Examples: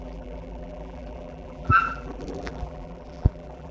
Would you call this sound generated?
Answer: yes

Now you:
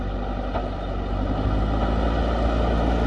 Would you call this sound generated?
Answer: no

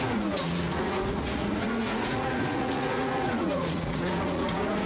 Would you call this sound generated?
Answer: yes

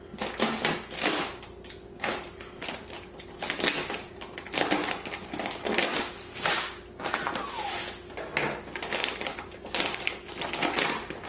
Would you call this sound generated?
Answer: no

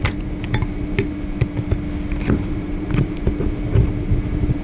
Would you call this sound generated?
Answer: no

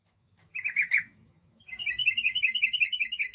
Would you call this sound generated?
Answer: yes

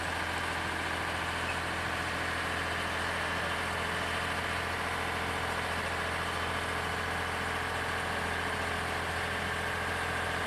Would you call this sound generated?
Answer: no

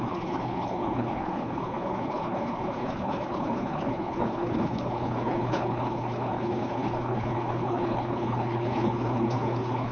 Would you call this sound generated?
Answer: yes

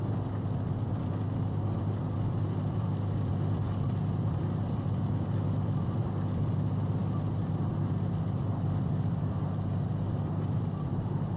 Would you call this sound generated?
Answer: yes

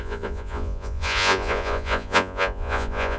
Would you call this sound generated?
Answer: yes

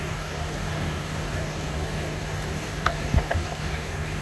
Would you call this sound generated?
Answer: yes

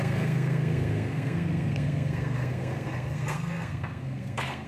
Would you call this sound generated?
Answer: yes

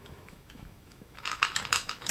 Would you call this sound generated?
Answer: yes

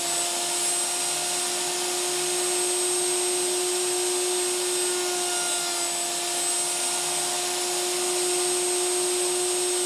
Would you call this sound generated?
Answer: no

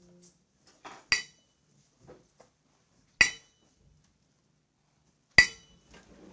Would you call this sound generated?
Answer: no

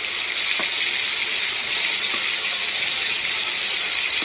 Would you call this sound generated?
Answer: no